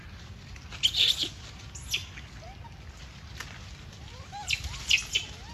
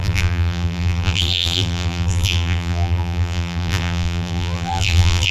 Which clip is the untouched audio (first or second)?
first